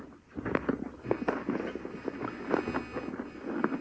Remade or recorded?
recorded